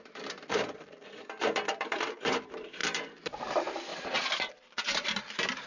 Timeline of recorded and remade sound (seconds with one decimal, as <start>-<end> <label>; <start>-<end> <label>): 0.0-3.9 remade; 3.9-4.5 recorded; 4.5-5.7 remade